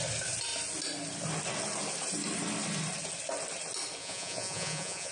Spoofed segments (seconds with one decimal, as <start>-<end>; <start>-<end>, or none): 4.0-5.1